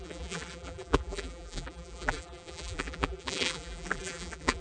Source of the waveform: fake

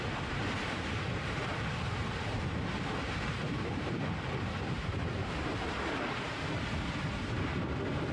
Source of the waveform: fake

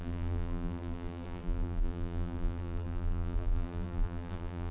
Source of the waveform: fake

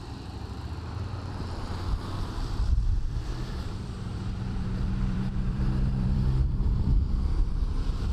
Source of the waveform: fake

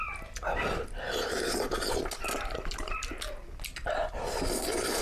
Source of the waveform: real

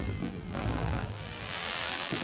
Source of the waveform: fake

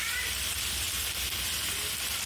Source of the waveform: fake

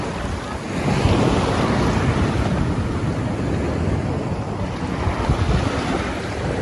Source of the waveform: real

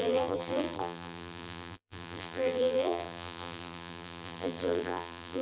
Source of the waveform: fake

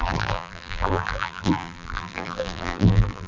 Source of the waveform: fake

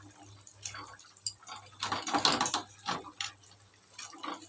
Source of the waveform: real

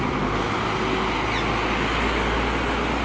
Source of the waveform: real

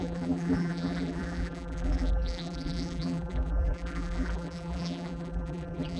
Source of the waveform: fake